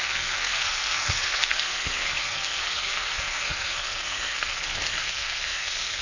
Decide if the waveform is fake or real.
fake